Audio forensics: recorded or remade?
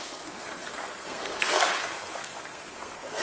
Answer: remade